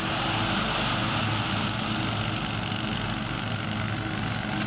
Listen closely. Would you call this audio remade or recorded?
recorded